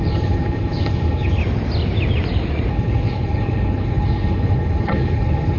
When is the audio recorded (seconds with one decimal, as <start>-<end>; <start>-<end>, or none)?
1.4-2.7